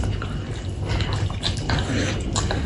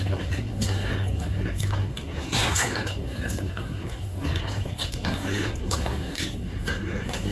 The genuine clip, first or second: first